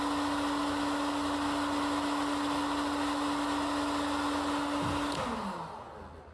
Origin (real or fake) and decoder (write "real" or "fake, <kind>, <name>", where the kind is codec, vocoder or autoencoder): real